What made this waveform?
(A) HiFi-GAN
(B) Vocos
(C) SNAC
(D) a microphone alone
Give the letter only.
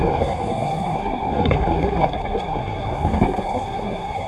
C